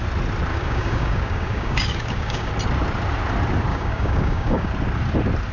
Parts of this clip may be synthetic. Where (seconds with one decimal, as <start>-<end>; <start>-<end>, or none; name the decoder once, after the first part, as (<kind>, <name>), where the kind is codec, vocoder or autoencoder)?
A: 0.5-2.5 (codec, DAC); 3.7-4.7